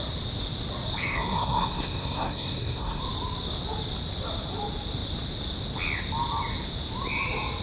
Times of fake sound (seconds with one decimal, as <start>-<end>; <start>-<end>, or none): 1.0-3.0